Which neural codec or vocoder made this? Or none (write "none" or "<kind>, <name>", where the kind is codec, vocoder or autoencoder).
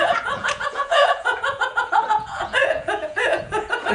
vocoder, Vocos